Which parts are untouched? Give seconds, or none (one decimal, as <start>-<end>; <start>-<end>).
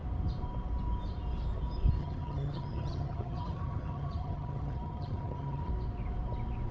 0.0-2.0; 5.7-6.7